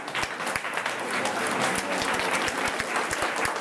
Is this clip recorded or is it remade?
recorded